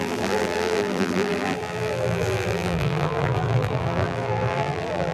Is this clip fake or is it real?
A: fake